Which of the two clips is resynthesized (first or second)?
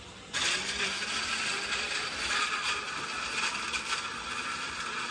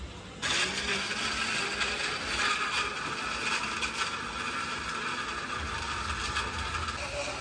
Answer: first